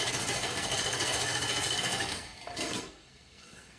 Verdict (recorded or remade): remade